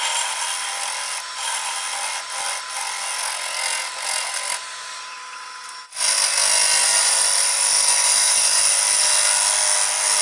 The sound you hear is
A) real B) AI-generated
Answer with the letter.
A